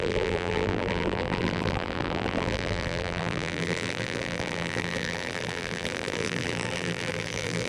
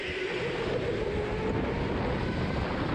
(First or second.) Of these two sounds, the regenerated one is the first